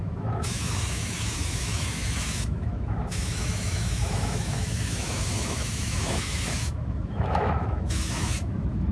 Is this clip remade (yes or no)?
yes